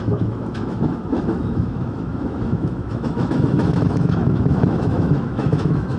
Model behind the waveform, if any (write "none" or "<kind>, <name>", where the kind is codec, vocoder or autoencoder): autoencoder, DAC-VAE